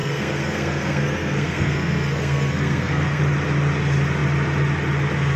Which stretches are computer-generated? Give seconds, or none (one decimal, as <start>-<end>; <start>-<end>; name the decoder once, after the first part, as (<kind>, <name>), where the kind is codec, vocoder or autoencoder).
0.0-3.2 (codec, SNAC)